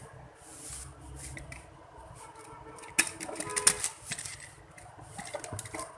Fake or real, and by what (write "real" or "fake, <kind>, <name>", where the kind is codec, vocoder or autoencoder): real